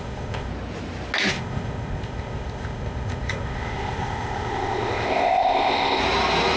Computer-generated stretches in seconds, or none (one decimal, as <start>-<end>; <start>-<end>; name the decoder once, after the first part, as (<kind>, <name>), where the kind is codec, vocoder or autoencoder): 0.0-0.5 (codec, ZipCodec); 1.3-6.0